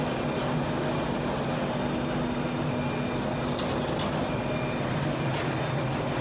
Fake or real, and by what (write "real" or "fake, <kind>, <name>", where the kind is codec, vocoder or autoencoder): real